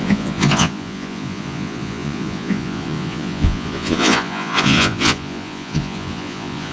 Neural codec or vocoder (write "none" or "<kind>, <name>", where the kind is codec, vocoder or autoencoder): vocoder, Vocos